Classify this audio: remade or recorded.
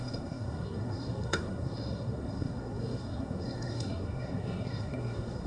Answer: remade